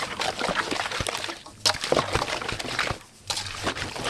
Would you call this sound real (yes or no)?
yes